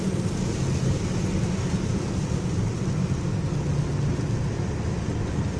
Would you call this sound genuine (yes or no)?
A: yes